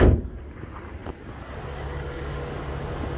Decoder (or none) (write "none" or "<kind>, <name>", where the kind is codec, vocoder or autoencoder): none